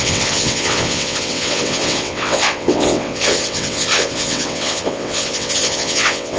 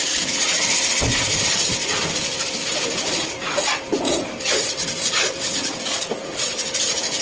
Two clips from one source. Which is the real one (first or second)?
second